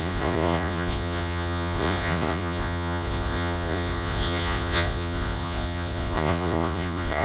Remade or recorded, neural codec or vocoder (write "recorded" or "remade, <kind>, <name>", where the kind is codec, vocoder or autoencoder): remade, vocoder, Vocos